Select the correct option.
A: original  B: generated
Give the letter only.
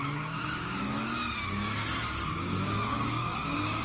B